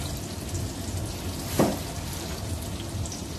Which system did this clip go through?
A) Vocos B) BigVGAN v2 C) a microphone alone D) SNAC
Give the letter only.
C